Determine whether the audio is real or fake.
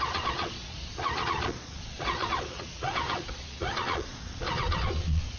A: fake